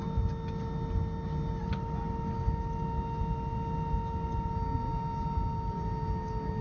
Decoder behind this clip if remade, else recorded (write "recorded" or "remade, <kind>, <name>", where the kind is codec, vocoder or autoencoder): recorded